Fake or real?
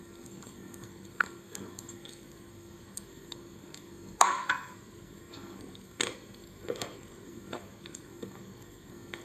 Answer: fake